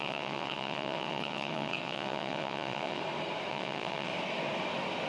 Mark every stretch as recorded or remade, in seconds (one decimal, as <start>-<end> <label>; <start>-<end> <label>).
0.0-3.0 remade; 3.0-3.5 recorded; 3.5-4.1 remade; 4.1-5.1 recorded